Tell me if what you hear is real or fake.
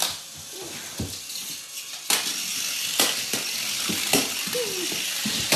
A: real